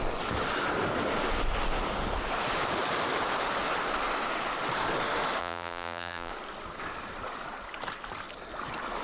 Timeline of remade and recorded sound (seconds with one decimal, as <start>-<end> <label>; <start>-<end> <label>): 0.0-5.4 recorded; 5.4-6.3 remade; 6.3-9.0 recorded